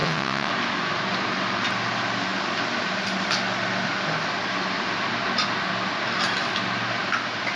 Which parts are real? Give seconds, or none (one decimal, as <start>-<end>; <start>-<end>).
0.5-7.6